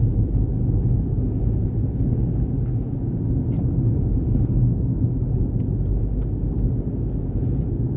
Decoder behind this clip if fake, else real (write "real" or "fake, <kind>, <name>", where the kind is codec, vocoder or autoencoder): real